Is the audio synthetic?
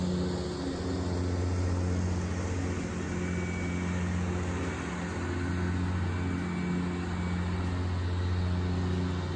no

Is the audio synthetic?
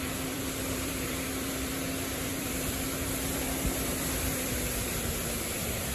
yes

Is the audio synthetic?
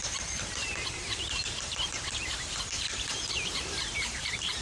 yes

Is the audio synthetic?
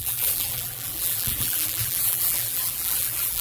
yes